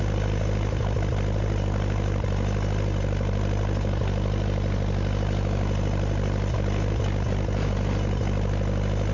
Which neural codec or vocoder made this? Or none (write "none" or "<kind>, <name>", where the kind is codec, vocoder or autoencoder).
none